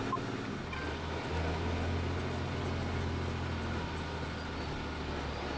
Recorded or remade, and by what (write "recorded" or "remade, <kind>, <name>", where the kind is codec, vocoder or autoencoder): recorded